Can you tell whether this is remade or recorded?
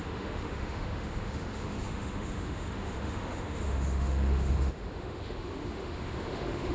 remade